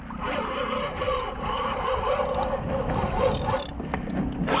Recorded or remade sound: recorded